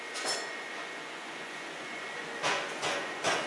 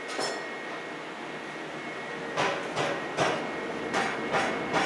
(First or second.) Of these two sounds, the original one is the second